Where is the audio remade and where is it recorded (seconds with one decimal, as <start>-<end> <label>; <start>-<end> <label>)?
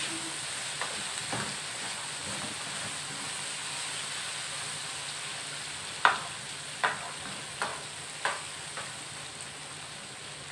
0.0-1.7 recorded; 1.7-2.2 remade; 2.2-10.5 recorded